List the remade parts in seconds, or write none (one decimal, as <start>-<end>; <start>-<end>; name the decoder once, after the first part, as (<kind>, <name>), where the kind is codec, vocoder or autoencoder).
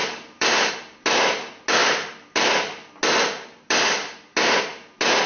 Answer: 0.0-0.7 (vocoder, BigVGAN v2)